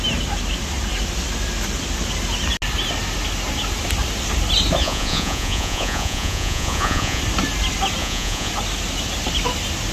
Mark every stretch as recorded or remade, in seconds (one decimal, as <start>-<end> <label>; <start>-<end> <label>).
0.0-4.8 recorded; 4.8-7.2 remade; 7.2-8.0 recorded; 8.0-8.5 remade; 8.5-9.9 recorded

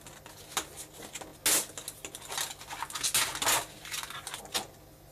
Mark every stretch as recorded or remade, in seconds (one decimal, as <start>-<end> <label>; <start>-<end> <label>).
0.0-5.1 recorded